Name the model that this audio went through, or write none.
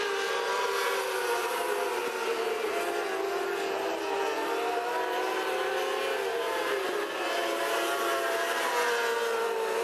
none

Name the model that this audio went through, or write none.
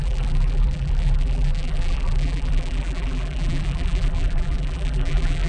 vocoder, BigVGAN v2